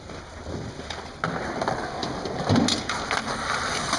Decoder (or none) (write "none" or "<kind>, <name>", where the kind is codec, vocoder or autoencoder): none